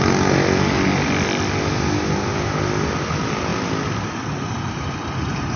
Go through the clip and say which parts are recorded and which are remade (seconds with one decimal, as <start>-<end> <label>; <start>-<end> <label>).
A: 0.0-3.5 recorded; 3.5-5.6 remade